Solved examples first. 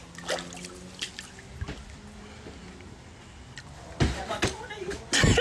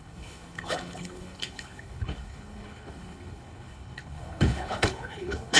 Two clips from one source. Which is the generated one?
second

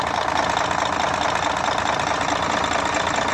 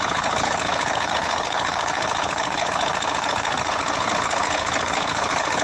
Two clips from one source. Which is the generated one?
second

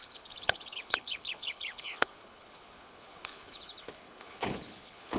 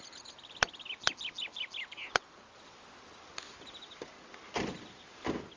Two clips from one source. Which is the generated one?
first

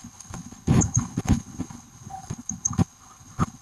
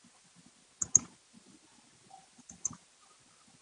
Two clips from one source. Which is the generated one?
first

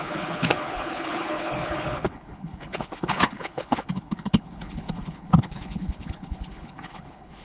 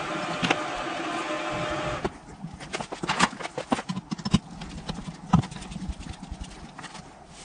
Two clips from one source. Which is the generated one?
first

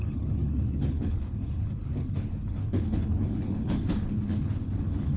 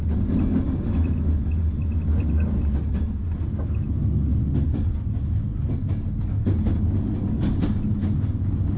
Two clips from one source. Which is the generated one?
first